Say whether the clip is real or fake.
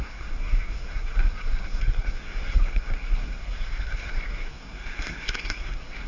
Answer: fake